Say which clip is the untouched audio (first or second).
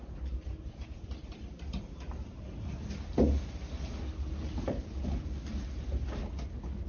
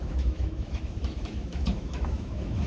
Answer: first